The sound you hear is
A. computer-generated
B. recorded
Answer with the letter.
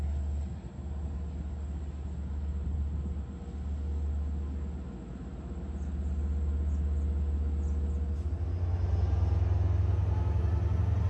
B